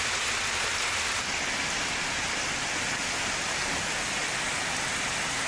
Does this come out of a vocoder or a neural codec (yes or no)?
no